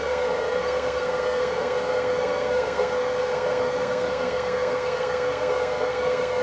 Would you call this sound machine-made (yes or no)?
yes